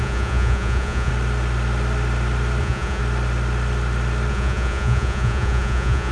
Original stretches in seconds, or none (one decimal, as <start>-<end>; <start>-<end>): 1.1-2.6; 3.0-4.3